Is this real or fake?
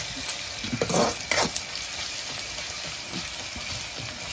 real